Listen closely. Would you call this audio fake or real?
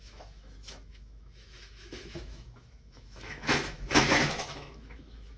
fake